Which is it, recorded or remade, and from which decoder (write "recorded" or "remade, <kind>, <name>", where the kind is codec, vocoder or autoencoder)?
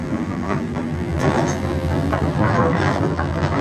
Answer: remade, vocoder, BigVGAN v2